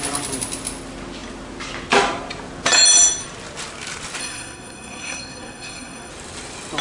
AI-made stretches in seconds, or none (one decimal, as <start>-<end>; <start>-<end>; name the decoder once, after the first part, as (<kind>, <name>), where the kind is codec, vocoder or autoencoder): 4.2-6.1 (codec, SNAC)